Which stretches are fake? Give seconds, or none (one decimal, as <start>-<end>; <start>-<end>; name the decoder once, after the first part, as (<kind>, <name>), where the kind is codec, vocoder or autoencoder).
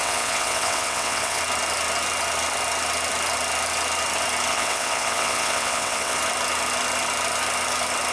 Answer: 0.0-1.4 (vocoder, WaveNeXt); 4.5-6.2